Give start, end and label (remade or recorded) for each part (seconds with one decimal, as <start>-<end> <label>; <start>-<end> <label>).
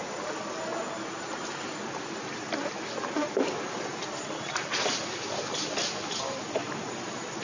0.0-7.4 recorded